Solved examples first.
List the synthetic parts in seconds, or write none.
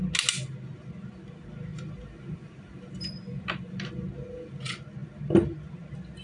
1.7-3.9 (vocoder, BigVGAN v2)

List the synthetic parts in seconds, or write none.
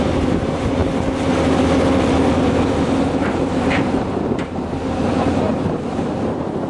0.0-0.8 (vocoder, BigVGAN v2); 3.2-6.7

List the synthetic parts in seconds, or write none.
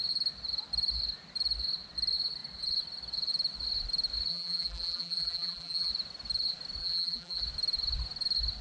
4.3-5.9 (vocoder, BigVGAN v2); 6.8-7.4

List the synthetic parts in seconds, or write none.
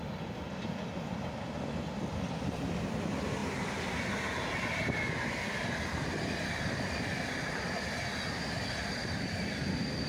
0.0-3.4 (vocoder, BigVGAN v2); 4.5-10.1